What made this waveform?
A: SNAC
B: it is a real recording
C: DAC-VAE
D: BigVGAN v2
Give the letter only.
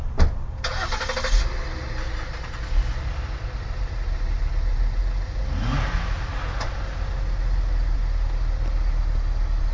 B